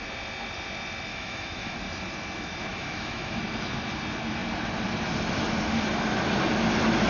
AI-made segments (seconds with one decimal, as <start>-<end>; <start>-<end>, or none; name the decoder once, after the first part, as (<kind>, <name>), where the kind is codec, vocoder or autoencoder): 1.1-1.8 (autoencoder, DAC-VAE); 2.7-3.4